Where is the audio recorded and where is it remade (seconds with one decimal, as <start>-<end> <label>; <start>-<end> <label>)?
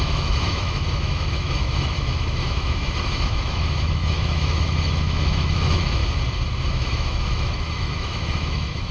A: 0.0-6.0 remade; 6.0-6.7 recorded; 6.7-8.9 remade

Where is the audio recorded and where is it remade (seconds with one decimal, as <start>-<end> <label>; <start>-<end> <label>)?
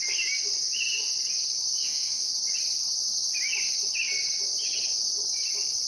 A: 0.0-1.8 recorded; 1.8-2.3 remade; 2.3-5.9 recorded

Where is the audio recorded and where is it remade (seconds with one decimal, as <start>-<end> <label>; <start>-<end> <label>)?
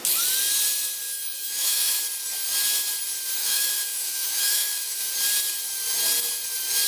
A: 0.0-1.0 recorded; 1.0-2.0 remade; 2.0-3.4 recorded; 3.4-5.1 remade; 5.1-6.9 recorded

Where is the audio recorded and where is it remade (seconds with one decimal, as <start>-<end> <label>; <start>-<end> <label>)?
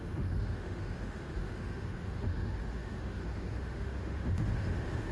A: 0.0-5.1 remade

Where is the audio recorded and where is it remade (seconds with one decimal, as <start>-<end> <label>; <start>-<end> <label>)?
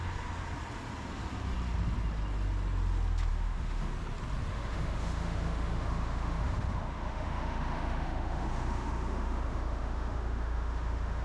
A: 0.0-3.3 recorded; 3.3-3.9 remade; 3.9-4.5 recorded; 4.5-11.2 remade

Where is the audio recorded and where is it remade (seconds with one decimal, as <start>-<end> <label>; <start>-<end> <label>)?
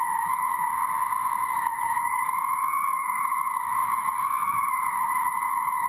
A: 0.0-0.7 remade; 0.7-1.5 recorded; 1.5-5.9 remade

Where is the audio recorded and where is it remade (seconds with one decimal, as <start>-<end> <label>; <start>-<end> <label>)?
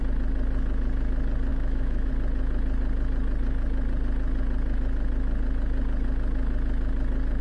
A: 0.0-1.5 recorded; 1.5-2.1 remade; 2.1-7.4 recorded